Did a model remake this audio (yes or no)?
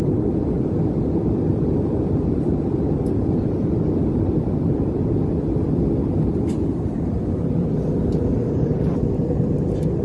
no